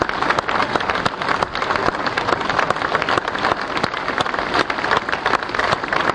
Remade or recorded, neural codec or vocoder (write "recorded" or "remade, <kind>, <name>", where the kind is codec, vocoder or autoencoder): recorded